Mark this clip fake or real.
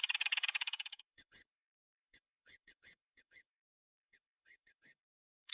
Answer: fake